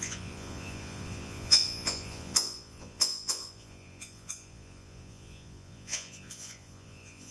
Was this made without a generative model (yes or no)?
no